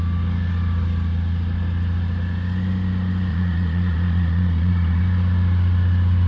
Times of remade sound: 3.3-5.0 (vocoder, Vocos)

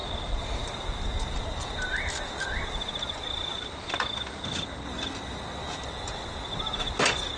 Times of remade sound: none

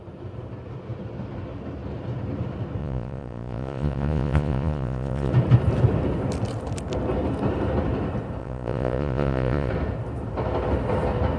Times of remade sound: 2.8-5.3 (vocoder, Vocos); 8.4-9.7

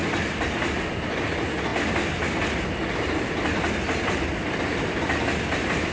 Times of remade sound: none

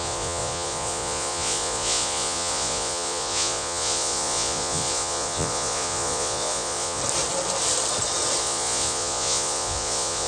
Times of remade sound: 0.0-7.0 (vocoder, Vocos); 8.4-10.3

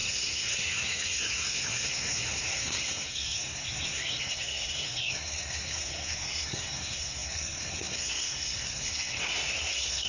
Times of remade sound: 0.0-10.1 (codec, SNAC)

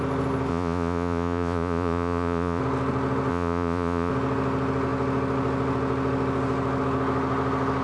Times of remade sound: 0.5-2.6 (vocoder, Vocos); 3.3-4.1

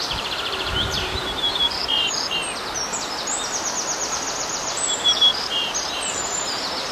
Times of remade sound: 0.0-1.8 (vocoder, BigVGAN v2); 4.1-6.9